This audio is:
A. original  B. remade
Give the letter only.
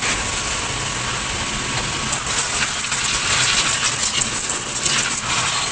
A